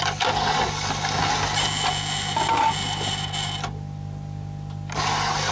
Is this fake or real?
real